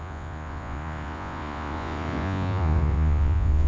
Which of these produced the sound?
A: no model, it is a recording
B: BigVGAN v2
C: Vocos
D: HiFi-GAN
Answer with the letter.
C